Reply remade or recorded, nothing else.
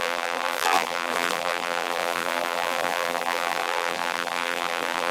remade